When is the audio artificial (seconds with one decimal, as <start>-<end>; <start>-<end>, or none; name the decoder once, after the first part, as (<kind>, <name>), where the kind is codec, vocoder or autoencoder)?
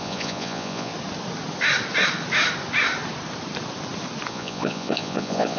0.0-0.9 (vocoder, Vocos); 4.3-5.6